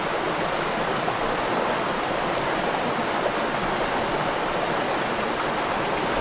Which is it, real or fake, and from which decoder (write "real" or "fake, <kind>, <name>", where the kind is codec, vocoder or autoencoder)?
real